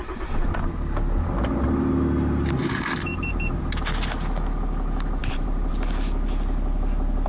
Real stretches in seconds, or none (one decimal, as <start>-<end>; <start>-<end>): 0.0-2.6; 3.6-5.2; 5.7-7.3